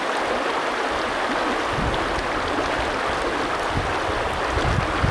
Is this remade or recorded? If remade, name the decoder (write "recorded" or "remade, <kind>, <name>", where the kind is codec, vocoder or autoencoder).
recorded